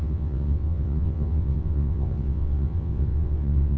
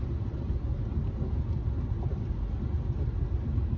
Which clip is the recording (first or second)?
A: second